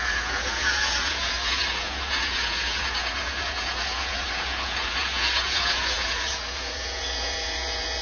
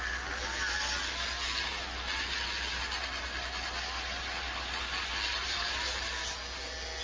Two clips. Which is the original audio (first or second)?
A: second